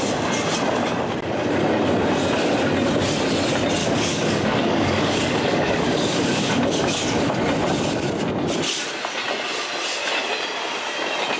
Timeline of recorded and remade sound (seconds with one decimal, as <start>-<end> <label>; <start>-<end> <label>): 0.0-3.8 recorded; 3.8-7.4 remade; 7.4-11.4 recorded